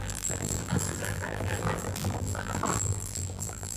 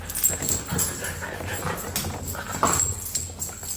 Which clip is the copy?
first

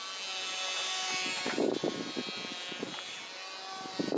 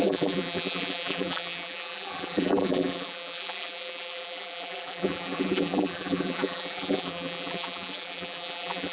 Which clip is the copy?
second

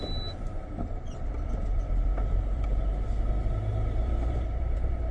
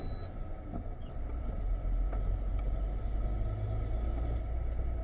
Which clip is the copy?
first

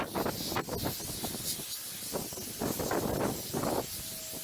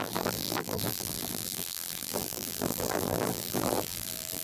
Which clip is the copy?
second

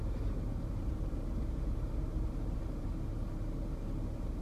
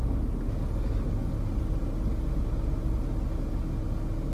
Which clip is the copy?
first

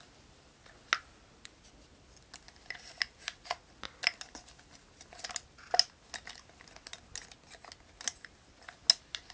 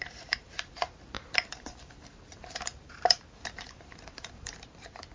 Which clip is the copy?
second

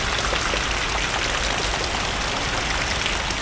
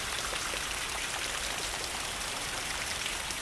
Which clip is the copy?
second